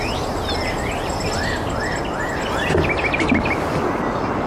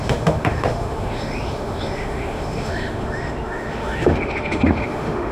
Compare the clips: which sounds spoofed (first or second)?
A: second